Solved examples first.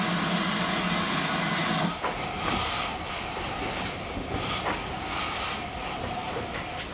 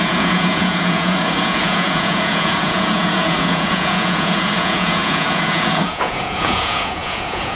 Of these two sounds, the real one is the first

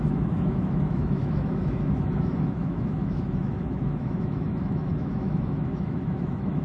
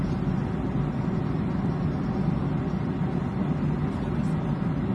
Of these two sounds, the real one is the second